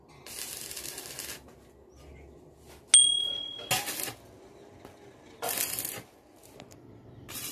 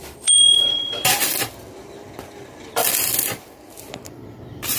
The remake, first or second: second